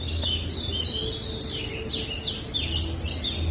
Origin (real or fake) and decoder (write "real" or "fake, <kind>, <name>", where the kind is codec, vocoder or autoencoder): real